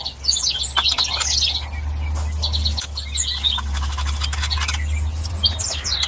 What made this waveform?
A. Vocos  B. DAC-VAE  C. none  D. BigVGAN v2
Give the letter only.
C